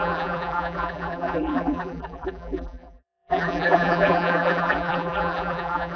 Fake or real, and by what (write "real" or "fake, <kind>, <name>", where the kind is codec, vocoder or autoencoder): fake, vocoder, BigVGAN v2